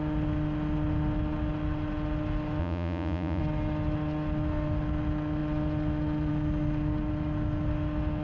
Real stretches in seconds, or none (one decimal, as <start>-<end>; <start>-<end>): 0.0-2.6; 3.4-8.2